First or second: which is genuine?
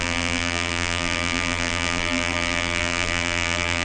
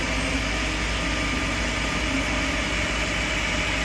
second